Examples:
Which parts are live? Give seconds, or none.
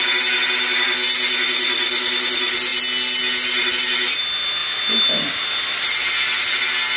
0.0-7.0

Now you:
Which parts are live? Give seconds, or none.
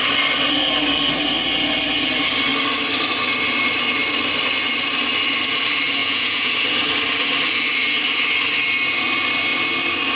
0.0-6.0; 6.5-10.2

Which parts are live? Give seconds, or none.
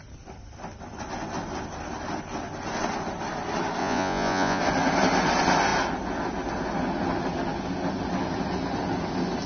0.0-3.8; 4.6-9.5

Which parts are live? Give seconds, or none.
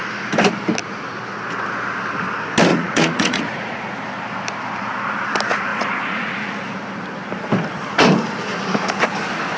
0.0-2.7; 4.0-5.7; 6.3-9.6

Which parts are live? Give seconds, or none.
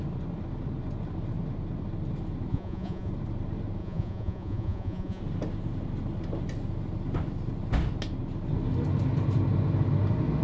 0.0-2.5; 3.1-3.8; 5.2-10.4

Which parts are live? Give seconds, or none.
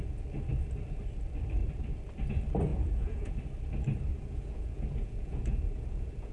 0.0-2.7; 3.3-4.1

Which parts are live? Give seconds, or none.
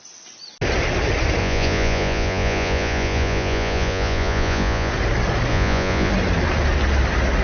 0.0-1.4; 4.9-5.5; 6.1-7.4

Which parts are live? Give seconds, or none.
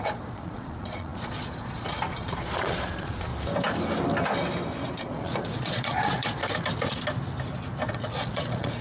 3.3-5.0; 6.4-7.9